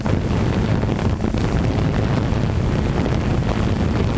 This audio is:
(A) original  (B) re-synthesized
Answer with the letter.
A